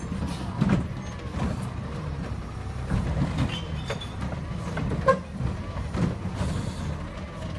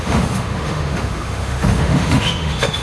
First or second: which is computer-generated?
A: second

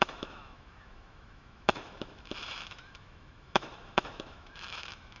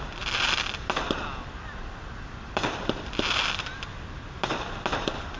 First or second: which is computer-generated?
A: first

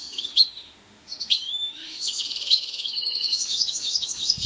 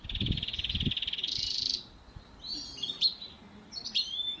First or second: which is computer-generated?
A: first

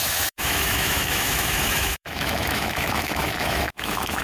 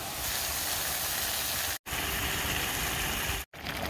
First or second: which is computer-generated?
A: first